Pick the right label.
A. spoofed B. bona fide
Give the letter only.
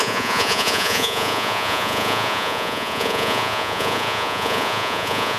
A